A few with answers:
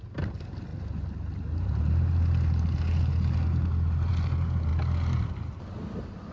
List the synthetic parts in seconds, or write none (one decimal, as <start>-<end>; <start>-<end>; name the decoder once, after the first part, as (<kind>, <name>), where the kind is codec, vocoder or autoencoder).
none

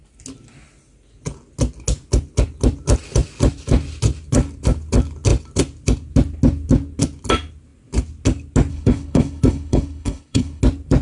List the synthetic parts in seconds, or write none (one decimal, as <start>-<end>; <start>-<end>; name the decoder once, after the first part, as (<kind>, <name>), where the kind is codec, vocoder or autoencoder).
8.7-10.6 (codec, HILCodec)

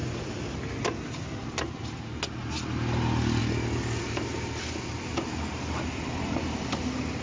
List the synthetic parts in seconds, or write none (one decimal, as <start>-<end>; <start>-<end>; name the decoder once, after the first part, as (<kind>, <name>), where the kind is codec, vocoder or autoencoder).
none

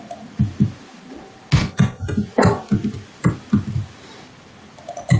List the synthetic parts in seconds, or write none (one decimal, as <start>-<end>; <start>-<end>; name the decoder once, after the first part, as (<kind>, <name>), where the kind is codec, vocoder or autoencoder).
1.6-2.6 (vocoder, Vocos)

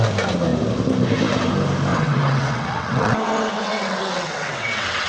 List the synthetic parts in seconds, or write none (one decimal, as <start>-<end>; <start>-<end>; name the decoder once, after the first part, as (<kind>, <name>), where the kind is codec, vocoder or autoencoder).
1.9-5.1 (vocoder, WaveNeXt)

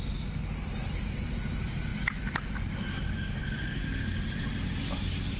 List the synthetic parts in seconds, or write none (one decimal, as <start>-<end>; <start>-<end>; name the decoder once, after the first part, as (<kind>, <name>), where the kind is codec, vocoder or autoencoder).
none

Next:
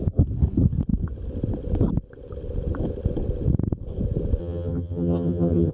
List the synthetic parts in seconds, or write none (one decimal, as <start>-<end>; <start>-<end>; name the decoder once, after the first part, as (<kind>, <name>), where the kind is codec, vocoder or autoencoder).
4.4-5.7 (vocoder, HiFi-GAN)

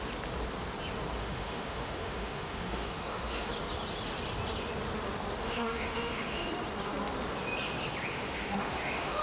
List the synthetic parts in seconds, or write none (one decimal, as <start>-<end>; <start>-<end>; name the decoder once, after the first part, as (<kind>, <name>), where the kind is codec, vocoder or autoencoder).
1.2-3.5 (autoencoder, DAC-VAE); 5.4-6.5; 8.1-9.2